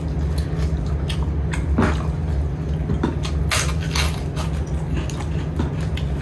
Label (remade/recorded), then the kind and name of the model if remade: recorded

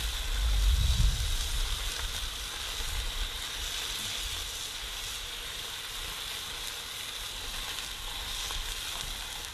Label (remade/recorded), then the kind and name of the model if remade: recorded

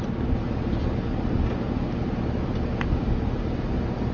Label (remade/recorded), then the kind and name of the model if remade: recorded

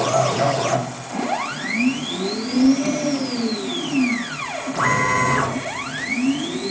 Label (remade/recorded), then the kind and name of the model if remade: recorded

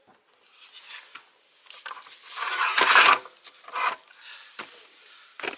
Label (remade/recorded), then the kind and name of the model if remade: recorded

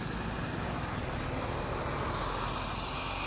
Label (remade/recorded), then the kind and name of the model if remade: recorded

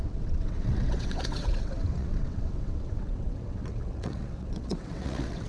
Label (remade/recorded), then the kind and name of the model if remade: remade, vocoder, WaveNeXt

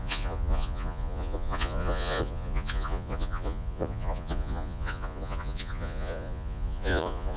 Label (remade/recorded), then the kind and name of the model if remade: remade, vocoder, Vocos